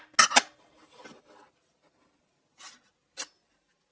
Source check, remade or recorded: recorded